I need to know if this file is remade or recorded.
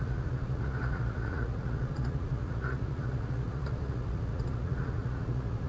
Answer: remade